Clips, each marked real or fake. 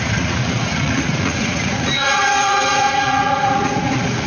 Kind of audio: fake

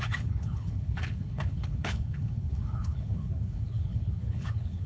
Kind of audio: fake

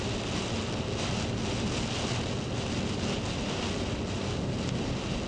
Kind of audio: real